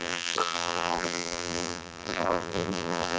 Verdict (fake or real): fake